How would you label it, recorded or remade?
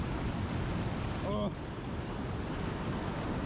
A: recorded